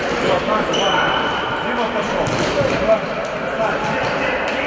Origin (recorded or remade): recorded